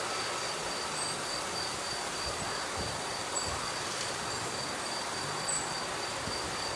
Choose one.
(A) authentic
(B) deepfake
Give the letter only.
A